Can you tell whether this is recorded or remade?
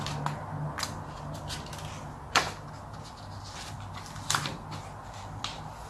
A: recorded